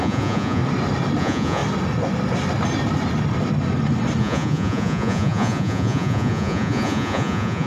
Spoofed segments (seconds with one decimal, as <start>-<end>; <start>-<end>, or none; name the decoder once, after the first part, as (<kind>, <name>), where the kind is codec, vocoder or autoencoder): 0.0-0.6 (vocoder, Vocos); 1.2-1.6; 4.2-7.7